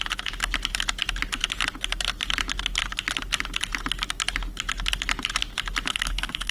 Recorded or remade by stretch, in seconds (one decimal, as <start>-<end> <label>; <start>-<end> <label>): 0.0-5.9 recorded; 5.9-6.5 remade